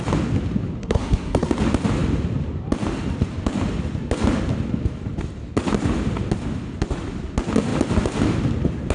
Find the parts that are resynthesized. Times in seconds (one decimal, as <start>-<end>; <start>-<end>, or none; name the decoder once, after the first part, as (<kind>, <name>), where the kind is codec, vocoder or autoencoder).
0.8-1.5 (codec, SNAC)